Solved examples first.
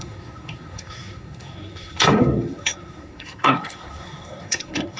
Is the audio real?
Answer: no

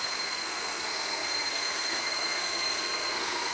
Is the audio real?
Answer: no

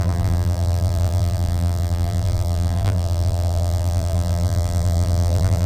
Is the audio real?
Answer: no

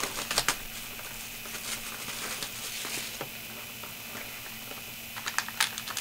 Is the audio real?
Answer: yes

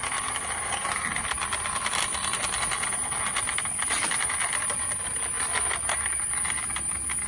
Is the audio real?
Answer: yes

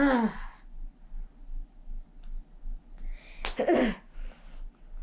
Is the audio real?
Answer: yes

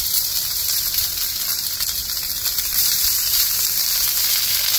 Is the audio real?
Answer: no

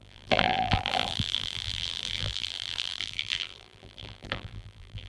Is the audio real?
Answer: no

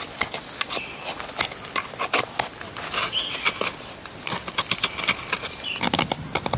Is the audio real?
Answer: yes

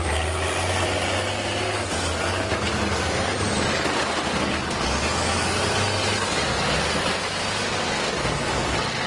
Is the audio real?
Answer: yes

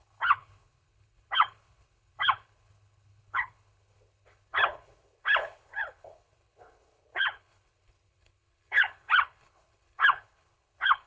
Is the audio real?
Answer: no